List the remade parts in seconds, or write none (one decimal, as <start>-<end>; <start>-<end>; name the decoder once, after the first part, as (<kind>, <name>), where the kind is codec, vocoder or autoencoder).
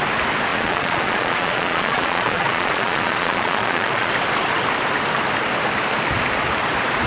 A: 0.5-4.1 (vocoder, Vocos)